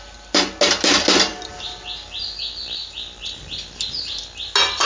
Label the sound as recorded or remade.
recorded